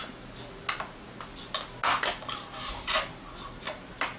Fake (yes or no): no